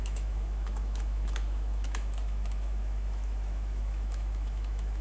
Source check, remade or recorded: remade